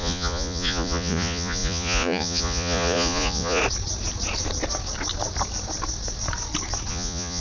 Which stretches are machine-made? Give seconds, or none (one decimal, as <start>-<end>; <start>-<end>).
0.0-3.6; 6.9-7.4